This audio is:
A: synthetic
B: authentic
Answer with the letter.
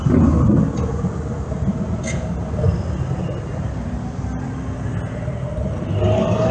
B